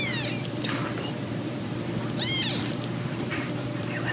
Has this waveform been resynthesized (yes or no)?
yes